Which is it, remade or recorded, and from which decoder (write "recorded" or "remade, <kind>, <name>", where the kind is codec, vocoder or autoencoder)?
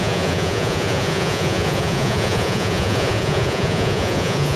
remade, vocoder, Vocos